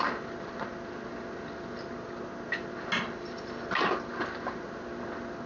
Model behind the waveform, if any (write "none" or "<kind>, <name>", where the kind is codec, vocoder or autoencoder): none